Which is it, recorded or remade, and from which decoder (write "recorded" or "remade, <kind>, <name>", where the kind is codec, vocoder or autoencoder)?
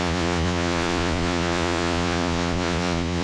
remade, vocoder, Vocos